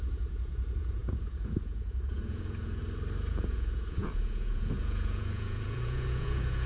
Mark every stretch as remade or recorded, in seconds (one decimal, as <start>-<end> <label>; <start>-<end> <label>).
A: 0.0-2.8 remade; 2.8-3.3 recorded; 3.3-6.7 remade